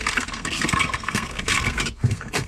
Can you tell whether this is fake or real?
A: fake